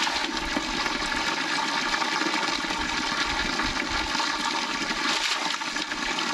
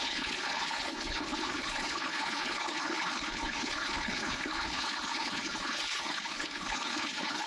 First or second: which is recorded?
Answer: first